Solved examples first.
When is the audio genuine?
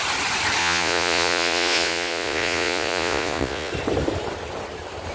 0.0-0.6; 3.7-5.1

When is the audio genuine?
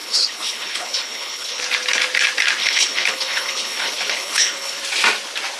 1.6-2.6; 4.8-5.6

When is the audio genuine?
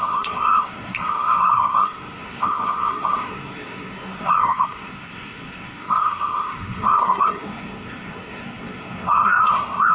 none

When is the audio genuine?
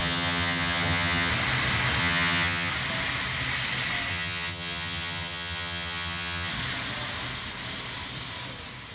1.3-2.0; 2.7-4.1; 6.5-8.9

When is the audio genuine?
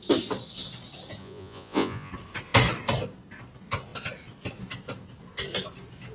0.0-1.2; 2.1-6.1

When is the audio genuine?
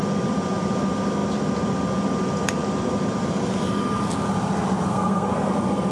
0.0-4.9; 5.5-5.9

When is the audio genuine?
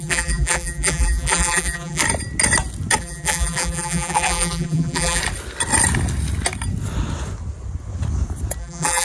2.0-3.0; 5.2-8.6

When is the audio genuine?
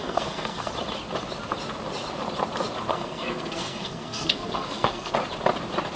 0.7-2.9; 5.1-6.0